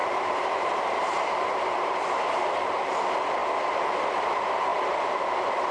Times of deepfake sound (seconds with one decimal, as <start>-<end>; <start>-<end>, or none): 0.0-3.0